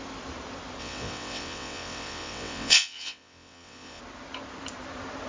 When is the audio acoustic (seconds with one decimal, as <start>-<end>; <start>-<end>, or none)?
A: 0.0-0.8; 4.0-5.3